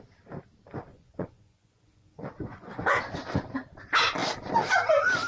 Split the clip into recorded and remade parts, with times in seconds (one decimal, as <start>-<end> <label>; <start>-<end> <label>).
0.0-0.9 recorded; 0.9-3.0 remade; 3.0-5.3 recorded